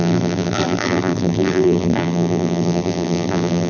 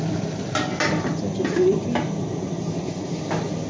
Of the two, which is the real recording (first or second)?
second